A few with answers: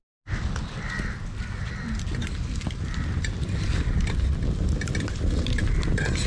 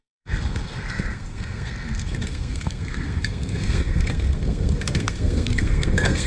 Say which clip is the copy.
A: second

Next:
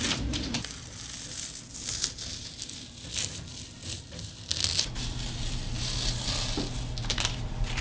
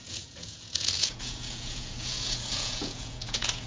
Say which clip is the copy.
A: second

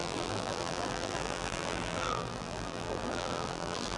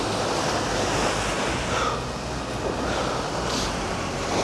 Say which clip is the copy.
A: first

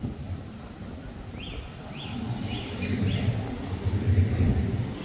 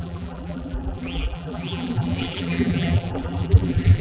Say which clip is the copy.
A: second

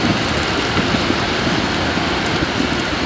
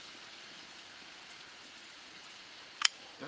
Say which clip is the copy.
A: second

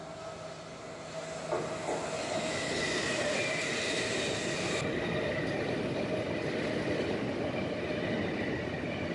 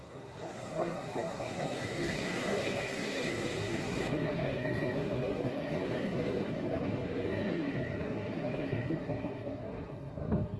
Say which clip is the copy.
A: second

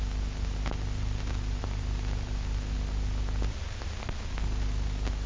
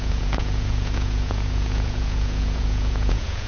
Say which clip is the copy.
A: second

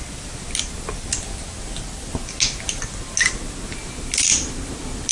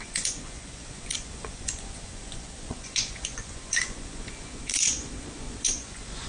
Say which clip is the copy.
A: second